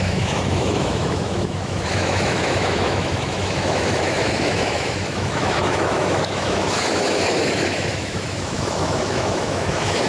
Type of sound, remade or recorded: remade